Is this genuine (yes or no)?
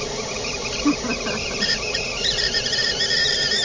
no